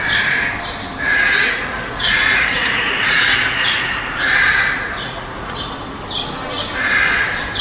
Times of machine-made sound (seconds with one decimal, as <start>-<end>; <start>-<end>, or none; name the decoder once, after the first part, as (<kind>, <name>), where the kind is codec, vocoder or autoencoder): 1.1-5.7 (vocoder, Vocos)